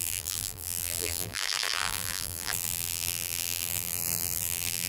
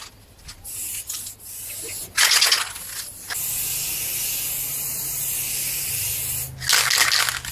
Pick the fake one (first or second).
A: first